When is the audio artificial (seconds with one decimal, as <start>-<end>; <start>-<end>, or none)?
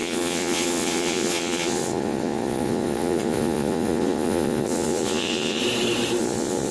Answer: 0.0-5.6; 6.2-6.7